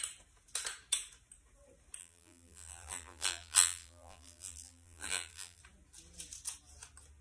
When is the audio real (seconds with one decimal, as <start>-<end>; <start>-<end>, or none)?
0.0-2.0; 5.6-7.2